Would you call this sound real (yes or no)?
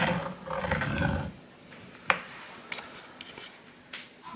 yes